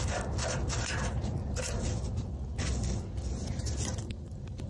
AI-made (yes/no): no